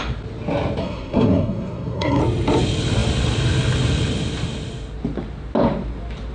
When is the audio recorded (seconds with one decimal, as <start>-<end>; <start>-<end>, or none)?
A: 0.0-0.8; 2.2-6.3